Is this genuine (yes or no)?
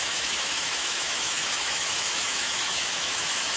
no